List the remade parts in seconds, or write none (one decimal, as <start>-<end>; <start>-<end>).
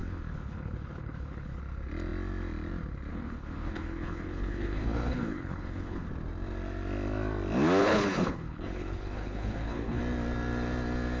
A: 0.0-1.6; 3.1-6.1; 7.8-10.0